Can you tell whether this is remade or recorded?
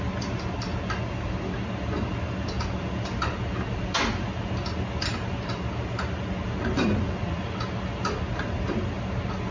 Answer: recorded